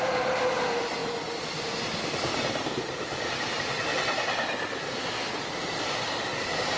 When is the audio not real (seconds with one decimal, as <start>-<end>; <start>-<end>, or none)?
none